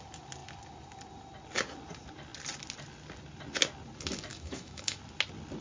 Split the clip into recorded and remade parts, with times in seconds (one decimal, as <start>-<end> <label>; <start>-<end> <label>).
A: 0.0-4.3 recorded; 4.3-5.0 remade; 5.0-5.6 recorded